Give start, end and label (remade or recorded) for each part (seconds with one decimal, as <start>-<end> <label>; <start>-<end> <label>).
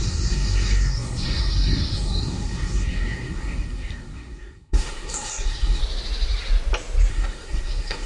0.0-5.8 remade; 5.8-7.1 recorded; 7.1-8.1 remade